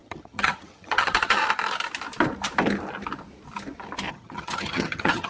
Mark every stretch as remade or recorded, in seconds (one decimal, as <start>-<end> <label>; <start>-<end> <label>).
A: 0.0-1.4 remade; 1.4-4.1 recorded; 4.1-5.3 remade